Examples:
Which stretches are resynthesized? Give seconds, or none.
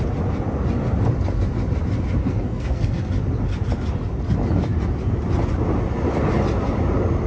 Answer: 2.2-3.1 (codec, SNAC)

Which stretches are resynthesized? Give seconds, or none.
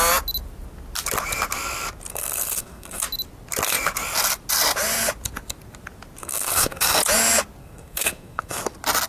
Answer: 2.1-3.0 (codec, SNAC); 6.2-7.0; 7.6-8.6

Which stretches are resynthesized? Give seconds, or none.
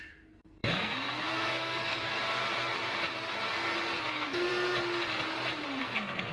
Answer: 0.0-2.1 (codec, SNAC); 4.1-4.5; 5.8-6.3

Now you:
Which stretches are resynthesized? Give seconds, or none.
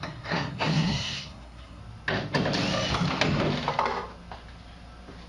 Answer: 0.0-1.8 (codec, SNAC)